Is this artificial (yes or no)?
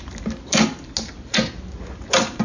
no